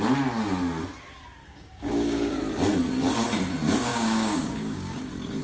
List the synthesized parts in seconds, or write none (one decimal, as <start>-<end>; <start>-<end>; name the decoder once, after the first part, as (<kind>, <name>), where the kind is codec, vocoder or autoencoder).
1.4-2.4 (codec, DAC); 3.9-5.0